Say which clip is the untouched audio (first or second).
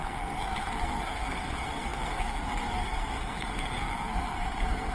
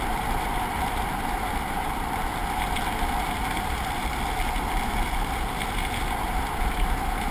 second